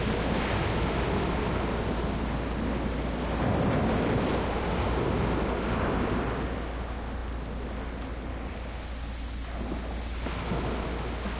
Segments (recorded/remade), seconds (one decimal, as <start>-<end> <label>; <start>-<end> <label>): 0.0-11.4 recorded

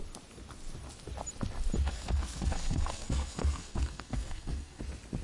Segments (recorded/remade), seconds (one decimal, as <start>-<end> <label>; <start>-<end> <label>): 0.0-1.8 recorded; 1.8-4.8 remade; 4.8-5.2 recorded